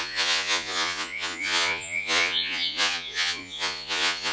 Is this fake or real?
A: fake